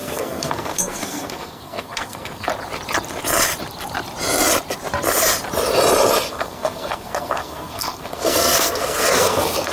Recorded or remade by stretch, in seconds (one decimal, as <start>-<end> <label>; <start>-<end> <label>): 0.0-2.5 remade; 2.5-6.3 recorded; 6.3-9.7 remade